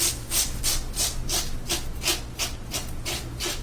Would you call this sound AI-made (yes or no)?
no